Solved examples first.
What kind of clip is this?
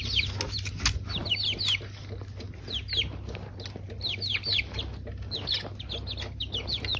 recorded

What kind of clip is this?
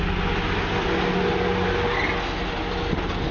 recorded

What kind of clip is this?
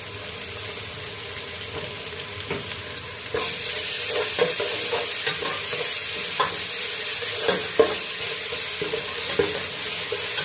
recorded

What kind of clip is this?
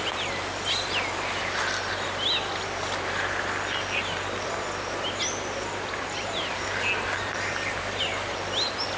recorded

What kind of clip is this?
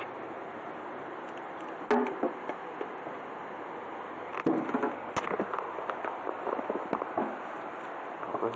recorded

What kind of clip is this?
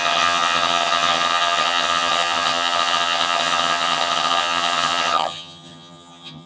remade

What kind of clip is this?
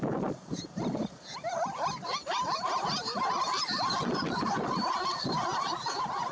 recorded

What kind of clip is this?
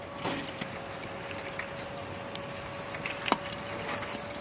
recorded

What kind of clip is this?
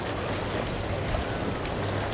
recorded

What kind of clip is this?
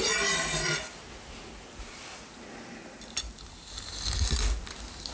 recorded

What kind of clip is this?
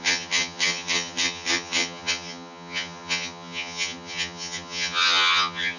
remade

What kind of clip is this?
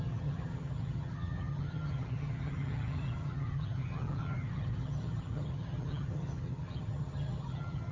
remade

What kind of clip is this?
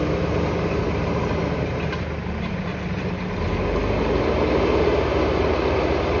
recorded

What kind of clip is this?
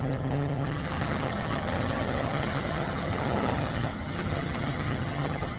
remade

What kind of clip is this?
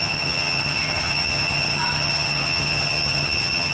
remade